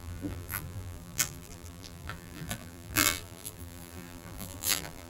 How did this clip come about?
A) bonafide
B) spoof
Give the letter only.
B